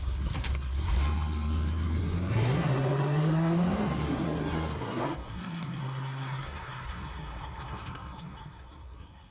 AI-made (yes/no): yes